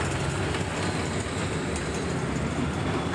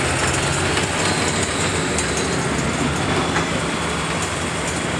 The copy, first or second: first